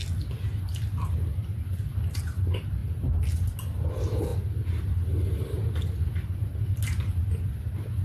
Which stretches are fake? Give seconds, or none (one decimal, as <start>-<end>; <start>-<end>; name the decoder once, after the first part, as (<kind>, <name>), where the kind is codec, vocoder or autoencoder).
none